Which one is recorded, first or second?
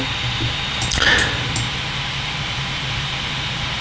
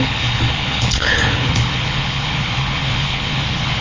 first